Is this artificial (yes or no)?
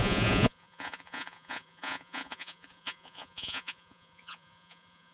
yes